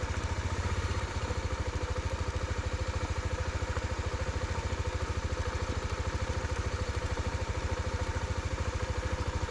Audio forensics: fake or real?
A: fake